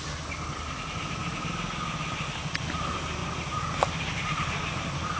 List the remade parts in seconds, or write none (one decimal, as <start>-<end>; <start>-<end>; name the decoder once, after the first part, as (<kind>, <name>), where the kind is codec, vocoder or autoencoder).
none